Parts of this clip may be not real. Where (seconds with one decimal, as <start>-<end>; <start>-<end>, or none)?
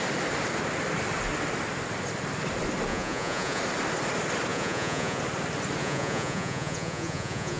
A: 2.9-3.6; 4.5-5.2; 5.8-7.6